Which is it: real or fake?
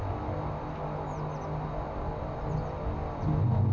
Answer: real